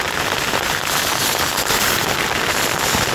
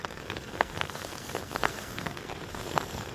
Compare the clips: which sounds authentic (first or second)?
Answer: first